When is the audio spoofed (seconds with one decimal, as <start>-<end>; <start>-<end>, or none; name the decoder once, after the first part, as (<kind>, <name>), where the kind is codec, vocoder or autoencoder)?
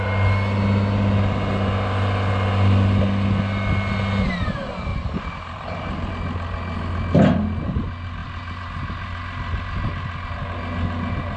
4.9-6.1 (vocoder, BigVGAN v2)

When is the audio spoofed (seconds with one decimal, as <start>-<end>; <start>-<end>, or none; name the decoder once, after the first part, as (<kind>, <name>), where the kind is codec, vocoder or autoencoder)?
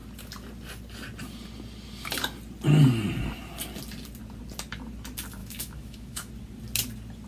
5.4-6.3 (autoencoder, DAC-VAE)